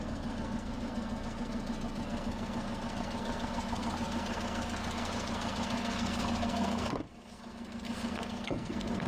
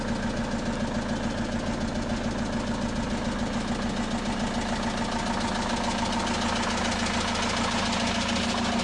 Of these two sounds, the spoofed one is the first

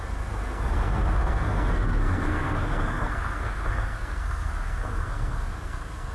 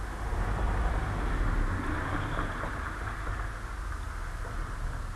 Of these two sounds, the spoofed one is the first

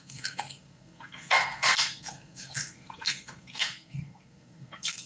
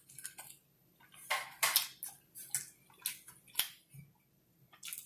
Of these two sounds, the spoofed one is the first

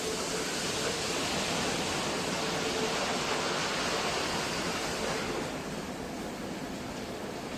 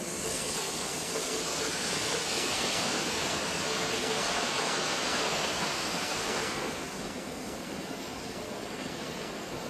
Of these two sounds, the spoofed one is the second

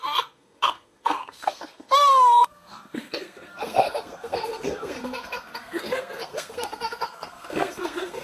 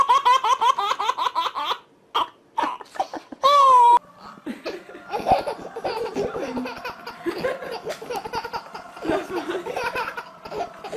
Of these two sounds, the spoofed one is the first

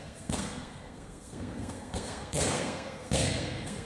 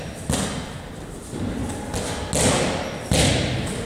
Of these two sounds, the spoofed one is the first